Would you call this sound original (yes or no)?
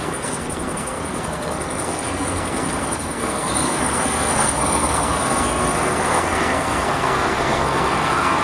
no